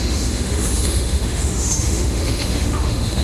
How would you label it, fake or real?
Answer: fake